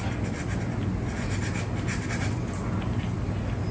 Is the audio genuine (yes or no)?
yes